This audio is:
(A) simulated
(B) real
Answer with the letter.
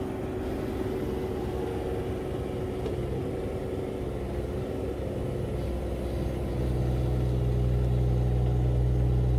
B